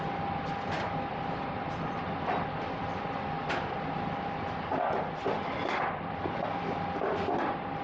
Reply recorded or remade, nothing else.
recorded